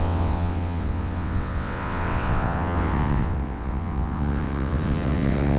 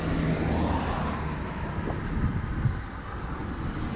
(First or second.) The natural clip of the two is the second